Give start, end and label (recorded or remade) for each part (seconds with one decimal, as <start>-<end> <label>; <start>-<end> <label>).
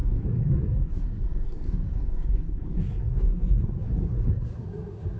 0.0-5.2 remade